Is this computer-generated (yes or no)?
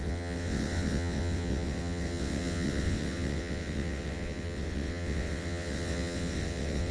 yes